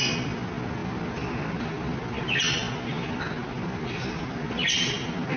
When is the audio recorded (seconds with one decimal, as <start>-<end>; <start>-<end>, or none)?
0.0-5.4